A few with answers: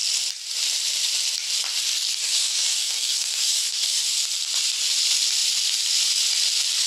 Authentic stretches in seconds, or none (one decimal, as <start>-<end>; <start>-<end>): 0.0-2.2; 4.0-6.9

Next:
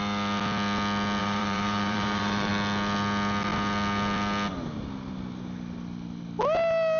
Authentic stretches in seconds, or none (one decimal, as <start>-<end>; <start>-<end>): 0.0-1.2; 2.5-7.0

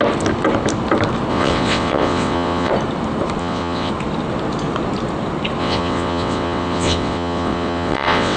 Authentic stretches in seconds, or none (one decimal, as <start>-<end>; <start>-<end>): 0.0-1.3; 2.7-3.4; 3.9-5.6

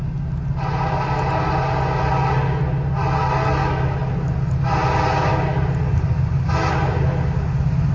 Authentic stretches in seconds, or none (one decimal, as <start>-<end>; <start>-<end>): 0.0-3.6; 4.1-7.9

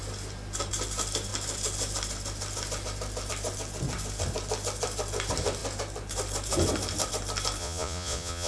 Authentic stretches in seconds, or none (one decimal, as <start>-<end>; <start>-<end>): 0.0-7.6